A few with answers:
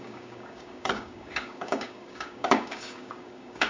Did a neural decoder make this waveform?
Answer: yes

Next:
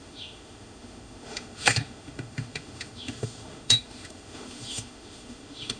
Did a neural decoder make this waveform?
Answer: yes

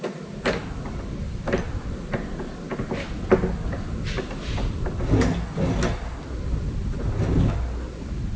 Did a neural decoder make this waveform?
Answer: no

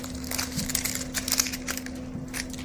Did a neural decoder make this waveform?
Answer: no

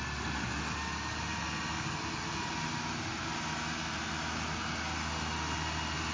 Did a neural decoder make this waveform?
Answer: no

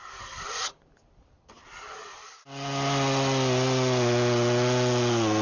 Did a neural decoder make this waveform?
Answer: no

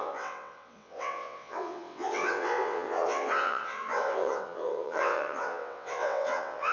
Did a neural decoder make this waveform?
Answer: yes